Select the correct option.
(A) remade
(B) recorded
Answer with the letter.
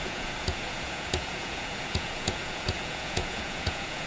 A